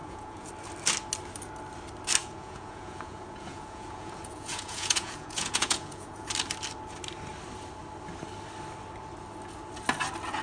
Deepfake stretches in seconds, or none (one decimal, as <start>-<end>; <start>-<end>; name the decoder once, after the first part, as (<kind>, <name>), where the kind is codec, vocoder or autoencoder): 0.0-0.5 (vocoder, Vocos); 2.2-6.3